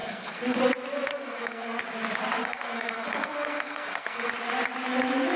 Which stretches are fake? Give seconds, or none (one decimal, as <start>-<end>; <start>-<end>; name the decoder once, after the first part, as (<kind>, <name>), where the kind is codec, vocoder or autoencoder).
0.0-0.6 (codec, SNAC); 1.1-1.8; 2.4-4.3